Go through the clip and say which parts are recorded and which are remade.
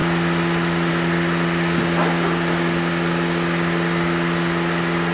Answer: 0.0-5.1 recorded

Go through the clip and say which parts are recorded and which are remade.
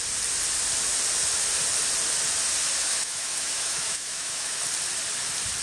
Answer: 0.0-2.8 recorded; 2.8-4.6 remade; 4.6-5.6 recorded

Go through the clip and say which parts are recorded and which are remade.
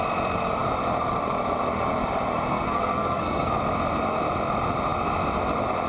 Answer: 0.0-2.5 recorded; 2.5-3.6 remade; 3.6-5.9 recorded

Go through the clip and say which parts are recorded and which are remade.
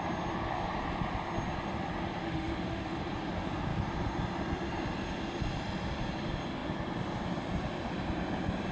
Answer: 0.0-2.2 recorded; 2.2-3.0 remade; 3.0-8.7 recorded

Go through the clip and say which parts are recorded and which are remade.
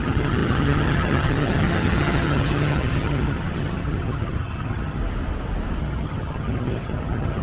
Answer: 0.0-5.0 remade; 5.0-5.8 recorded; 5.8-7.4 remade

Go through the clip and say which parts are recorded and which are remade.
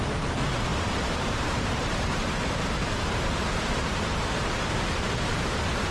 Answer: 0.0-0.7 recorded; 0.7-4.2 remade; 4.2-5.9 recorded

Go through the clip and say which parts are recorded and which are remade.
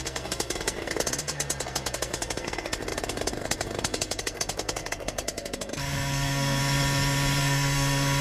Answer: 0.0-6.6 remade; 6.6-7.4 recorded; 7.4-8.2 remade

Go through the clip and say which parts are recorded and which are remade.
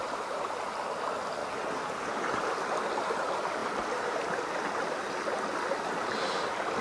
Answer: 0.0-6.8 recorded